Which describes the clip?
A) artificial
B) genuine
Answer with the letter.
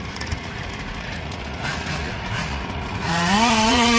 A